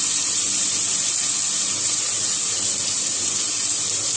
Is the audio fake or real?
fake